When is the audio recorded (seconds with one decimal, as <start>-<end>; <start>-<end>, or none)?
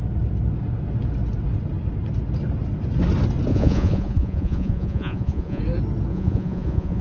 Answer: 0.0-3.5; 5.6-6.1